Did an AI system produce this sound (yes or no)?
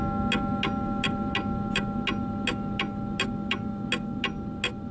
no